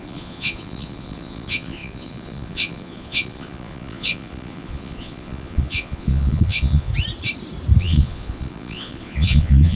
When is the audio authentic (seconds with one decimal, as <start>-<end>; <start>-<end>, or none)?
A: 6.9-7.8